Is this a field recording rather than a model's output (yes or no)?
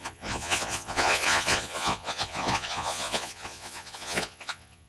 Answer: no